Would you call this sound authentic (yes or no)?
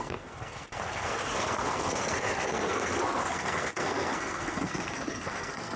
no